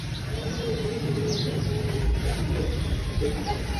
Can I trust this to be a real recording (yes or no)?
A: no